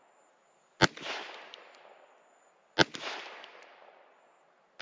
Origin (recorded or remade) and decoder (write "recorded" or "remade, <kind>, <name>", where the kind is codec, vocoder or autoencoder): recorded